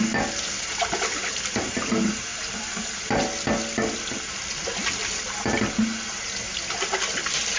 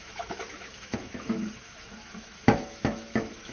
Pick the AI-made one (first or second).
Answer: second